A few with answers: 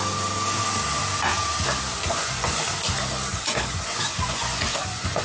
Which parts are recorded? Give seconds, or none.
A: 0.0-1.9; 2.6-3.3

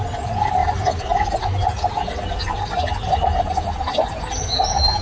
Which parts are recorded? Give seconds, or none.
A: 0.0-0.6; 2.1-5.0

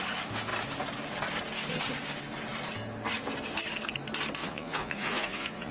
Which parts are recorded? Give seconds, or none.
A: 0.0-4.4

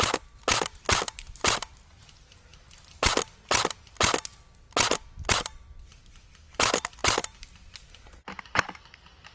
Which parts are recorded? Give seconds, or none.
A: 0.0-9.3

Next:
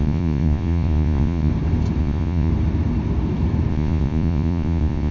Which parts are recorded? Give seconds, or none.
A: 1.5-2.0; 2.5-3.7

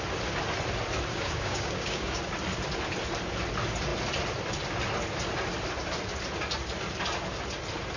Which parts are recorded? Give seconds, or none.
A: 0.0-1.1; 2.2-8.0

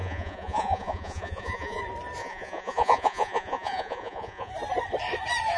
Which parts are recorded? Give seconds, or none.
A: 1.8-2.2; 4.5-5.6